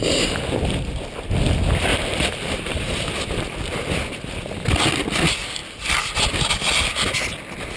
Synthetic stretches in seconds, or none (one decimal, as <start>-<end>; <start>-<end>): 1.9-2.8